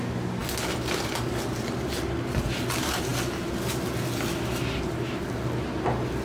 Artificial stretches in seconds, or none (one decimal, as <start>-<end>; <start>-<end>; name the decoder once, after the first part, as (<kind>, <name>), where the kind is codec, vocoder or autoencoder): none